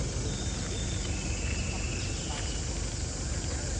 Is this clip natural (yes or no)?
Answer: yes